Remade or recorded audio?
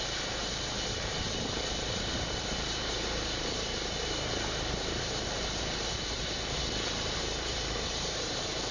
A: remade